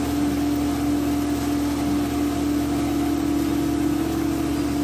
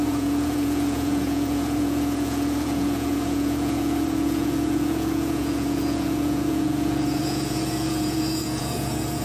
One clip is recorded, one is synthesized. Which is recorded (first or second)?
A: first